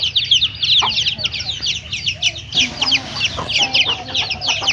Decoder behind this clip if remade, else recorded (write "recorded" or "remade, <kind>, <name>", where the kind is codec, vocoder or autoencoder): recorded